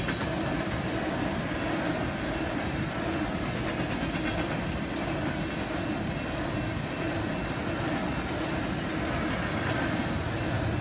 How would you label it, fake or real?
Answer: real